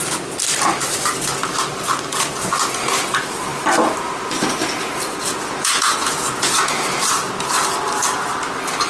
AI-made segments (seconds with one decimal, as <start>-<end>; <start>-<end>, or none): 5.2-7.0